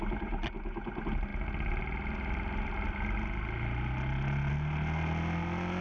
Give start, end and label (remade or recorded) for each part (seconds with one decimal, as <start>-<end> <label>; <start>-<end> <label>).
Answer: 0.0-5.8 recorded